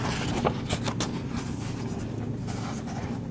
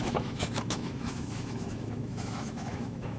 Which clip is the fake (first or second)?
second